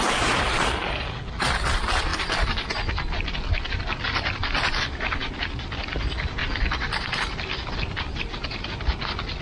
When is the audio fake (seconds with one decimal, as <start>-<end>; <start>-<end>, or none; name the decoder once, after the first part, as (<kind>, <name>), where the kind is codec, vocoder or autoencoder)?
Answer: 5.2-5.7 (vocoder, BigVGAN v2); 6.4-8.3